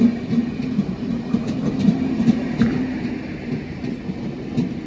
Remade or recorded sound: recorded